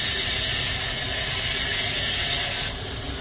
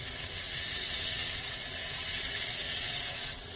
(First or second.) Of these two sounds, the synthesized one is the second